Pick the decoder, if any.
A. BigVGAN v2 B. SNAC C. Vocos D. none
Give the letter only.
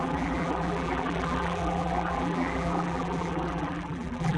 A